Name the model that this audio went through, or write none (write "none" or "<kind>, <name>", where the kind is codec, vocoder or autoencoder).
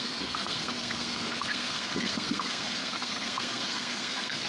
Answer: codec, SNAC